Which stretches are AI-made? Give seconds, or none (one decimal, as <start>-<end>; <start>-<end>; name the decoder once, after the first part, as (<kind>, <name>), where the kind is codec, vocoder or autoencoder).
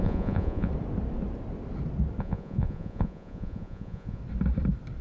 0.0-0.7 (vocoder, Vocos); 2.2-4.2